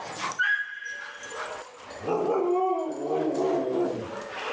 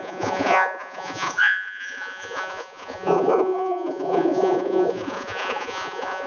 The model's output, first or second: second